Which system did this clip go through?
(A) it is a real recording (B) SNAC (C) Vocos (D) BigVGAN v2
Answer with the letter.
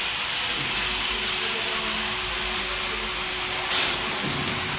A